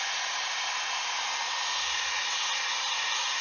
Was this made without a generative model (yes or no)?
no